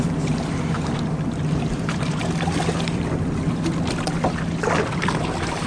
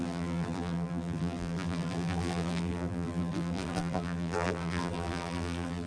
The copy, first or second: second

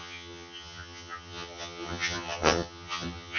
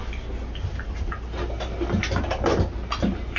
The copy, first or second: first